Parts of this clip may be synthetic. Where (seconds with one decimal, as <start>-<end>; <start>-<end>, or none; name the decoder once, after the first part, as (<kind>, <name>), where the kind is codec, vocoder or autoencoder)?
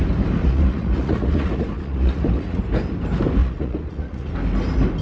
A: 0.4-2.6 (vocoder, Vocos); 3.4-4.3